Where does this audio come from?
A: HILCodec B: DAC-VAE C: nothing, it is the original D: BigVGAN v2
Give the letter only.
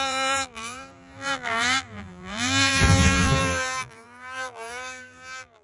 D